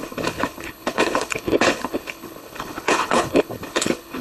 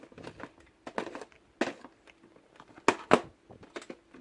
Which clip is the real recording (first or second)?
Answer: second